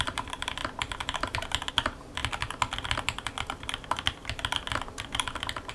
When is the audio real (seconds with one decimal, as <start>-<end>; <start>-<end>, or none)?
0.6-1.7; 2.2-5.7